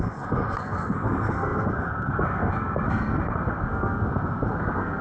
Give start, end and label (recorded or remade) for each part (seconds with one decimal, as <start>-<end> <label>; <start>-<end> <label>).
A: 0.0-5.0 remade